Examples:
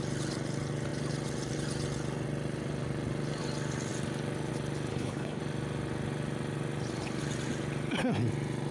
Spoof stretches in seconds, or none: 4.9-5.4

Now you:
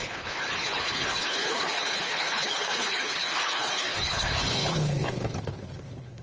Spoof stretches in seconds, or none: 0.0-6.2